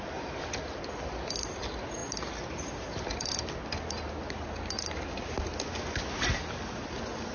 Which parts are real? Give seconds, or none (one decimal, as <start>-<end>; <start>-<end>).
0.0-7.3